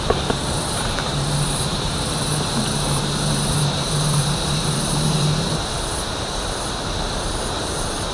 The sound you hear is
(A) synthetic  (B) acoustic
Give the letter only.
A